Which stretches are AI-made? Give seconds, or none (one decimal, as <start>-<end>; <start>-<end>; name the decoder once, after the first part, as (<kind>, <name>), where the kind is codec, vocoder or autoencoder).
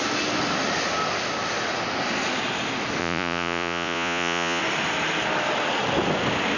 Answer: 3.0-4.6 (vocoder, Vocos)